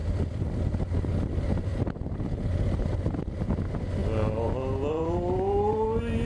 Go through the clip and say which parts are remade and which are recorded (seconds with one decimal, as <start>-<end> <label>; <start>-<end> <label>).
0.0-0.6 remade; 0.6-1.7 recorded; 1.7-3.3 remade; 3.3-6.3 recorded